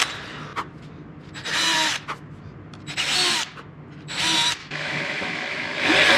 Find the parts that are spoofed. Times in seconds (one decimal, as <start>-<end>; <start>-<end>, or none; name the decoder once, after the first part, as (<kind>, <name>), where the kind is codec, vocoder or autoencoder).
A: 4.6-5.8 (autoencoder, DAC-VAE)